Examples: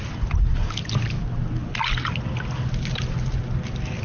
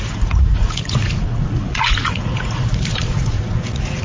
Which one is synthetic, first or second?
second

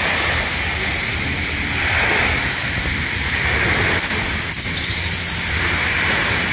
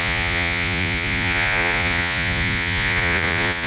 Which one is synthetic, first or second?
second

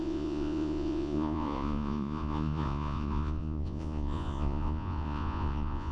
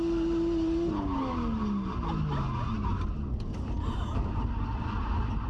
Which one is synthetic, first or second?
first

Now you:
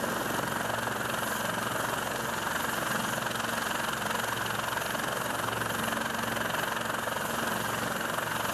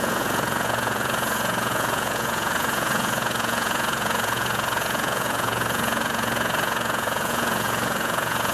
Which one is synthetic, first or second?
second